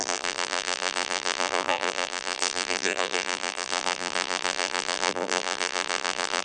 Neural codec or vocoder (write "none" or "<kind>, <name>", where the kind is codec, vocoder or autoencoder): vocoder, BigVGAN v2